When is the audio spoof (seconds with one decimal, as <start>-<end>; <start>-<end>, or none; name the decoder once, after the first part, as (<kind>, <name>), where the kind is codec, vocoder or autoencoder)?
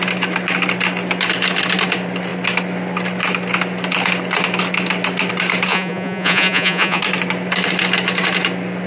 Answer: 5.7-7.0 (vocoder, Vocos)